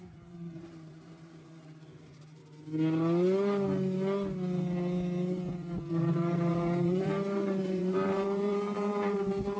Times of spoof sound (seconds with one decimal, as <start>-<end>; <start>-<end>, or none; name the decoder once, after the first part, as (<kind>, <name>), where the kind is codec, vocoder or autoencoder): 0.0-2.4 (vocoder, BigVGAN v2); 5.9-9.6